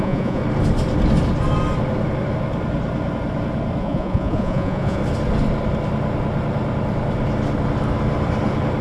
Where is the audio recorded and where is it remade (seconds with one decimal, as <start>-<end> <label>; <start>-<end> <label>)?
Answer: 0.0-0.4 remade; 0.4-3.8 recorded; 3.8-5.0 remade; 5.0-8.8 recorded